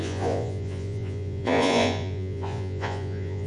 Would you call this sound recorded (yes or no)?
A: no